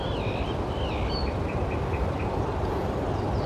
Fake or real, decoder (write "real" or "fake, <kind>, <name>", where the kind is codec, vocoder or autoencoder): real